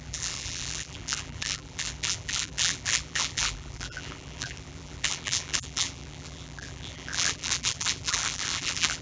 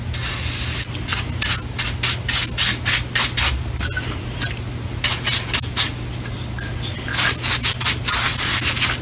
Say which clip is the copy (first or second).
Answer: first